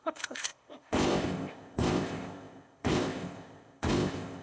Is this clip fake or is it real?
fake